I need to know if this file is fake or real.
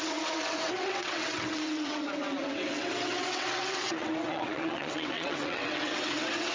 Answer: fake